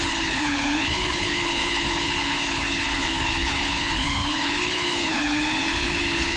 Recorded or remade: remade